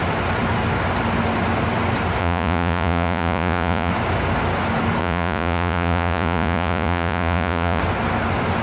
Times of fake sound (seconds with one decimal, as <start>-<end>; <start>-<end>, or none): 2.2-3.9; 5.0-7.8